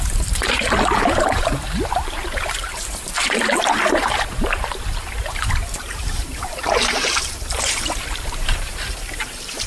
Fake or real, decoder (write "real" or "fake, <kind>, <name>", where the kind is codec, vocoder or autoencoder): fake, vocoder, BigVGAN v2